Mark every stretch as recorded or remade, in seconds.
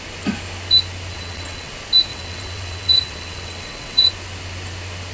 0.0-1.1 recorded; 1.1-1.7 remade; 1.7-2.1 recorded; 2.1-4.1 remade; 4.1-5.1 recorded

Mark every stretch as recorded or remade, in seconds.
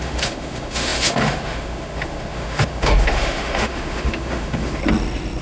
0.0-4.8 remade; 4.8-5.4 recorded